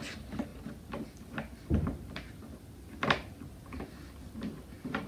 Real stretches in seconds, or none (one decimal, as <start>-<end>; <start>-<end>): 0.0-5.1